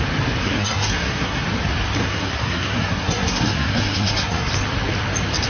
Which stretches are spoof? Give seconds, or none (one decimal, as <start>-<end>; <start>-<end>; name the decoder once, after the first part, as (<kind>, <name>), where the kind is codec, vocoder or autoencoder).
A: 0.4-1.4 (codec, SNAC); 2.0-4.5